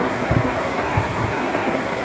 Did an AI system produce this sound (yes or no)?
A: yes